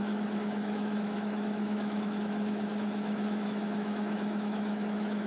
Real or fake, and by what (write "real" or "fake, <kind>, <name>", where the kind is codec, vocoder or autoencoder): fake, autoencoder, DAC-VAE